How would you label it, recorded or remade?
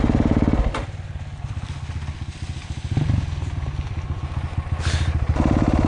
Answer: recorded